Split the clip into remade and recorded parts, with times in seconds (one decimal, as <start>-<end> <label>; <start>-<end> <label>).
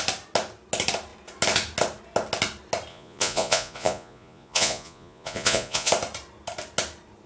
0.0-2.9 recorded; 2.9-5.9 remade; 5.9-7.3 recorded